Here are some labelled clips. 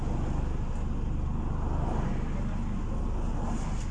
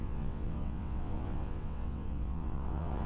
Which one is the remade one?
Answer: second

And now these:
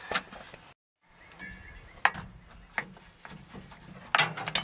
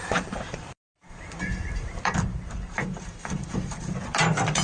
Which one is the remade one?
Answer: second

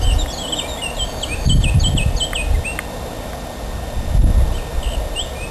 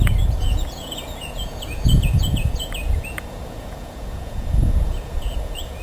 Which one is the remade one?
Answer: second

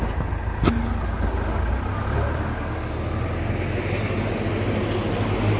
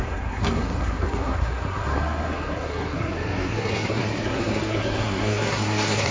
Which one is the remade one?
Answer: second